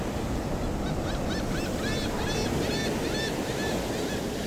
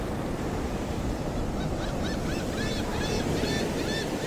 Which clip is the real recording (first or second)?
first